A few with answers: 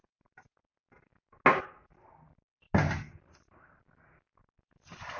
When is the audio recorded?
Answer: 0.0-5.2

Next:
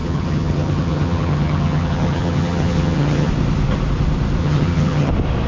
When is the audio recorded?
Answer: 3.3-4.4; 5.1-5.5

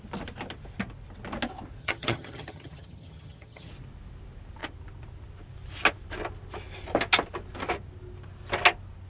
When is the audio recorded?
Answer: 0.0-1.8; 3.7-9.1

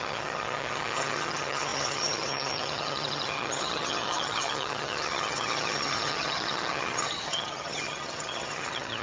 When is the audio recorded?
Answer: none

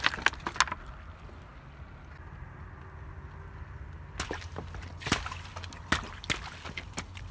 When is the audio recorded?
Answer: 0.0-7.3

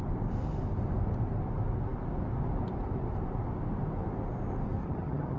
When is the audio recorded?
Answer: 0.0-4.8

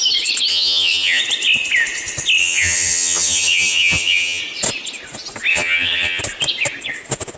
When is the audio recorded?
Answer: 0.0-0.5; 1.2-2.4; 4.4-5.5; 6.2-7.4

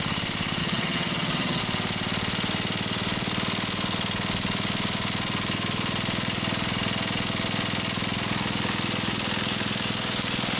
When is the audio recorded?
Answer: 0.0-0.6; 1.6-10.6